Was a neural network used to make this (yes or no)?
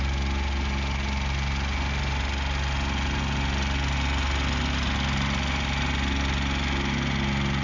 no